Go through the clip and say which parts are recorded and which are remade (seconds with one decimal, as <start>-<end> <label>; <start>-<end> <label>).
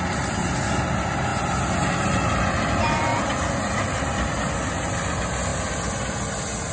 0.0-6.7 recorded